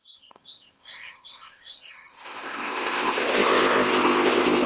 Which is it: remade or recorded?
remade